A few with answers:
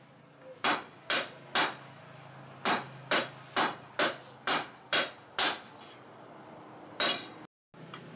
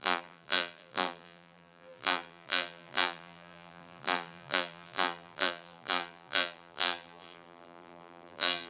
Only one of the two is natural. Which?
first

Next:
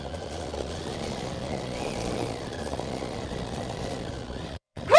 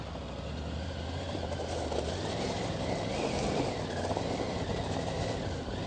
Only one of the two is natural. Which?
second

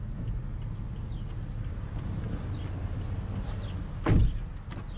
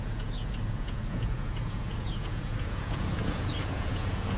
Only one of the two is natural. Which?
first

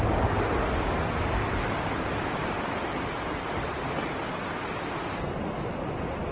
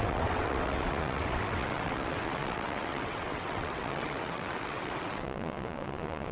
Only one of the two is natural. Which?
first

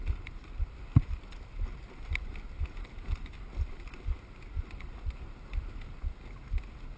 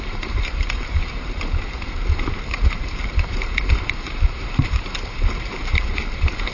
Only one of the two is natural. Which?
first